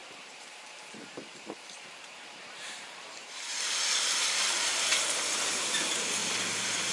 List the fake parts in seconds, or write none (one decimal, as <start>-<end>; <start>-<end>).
0.0-6.2